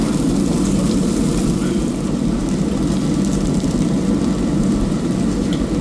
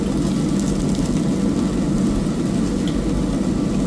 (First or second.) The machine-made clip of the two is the first